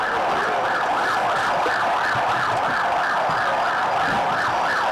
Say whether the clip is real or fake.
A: real